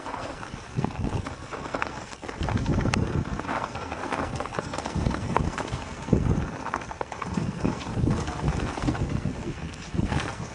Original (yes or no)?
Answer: no